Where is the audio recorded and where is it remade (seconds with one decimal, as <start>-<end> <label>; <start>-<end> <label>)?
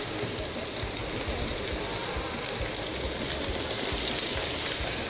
0.0-5.1 recorded